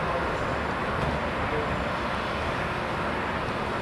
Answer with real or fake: real